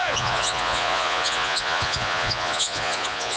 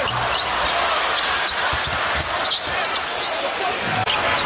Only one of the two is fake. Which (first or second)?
first